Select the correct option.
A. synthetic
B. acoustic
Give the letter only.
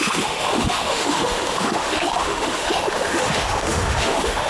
A